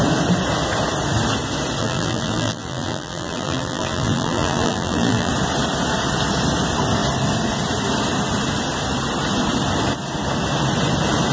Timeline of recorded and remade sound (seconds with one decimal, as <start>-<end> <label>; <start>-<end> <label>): 0.0-1.8 recorded; 1.8-5.3 remade; 5.3-11.3 recorded